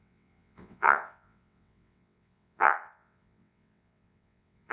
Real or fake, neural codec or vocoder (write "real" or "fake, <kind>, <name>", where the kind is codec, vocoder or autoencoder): fake, vocoder, WaveNeXt